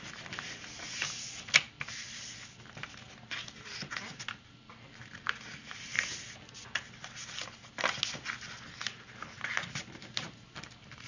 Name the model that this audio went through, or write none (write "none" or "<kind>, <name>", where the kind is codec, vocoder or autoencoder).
none